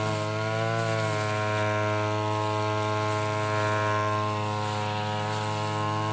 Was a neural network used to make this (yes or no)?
no